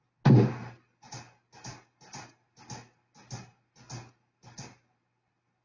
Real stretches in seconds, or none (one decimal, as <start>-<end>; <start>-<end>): 0.0-5.6